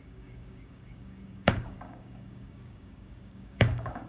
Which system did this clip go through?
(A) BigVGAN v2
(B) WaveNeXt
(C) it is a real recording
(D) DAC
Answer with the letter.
D